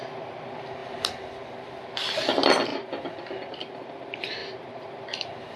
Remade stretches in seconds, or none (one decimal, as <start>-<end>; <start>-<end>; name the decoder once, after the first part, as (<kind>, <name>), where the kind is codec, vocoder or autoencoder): 4.4-5.6 (vocoder, BigVGAN v2)